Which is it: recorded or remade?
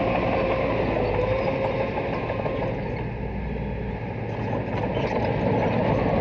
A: recorded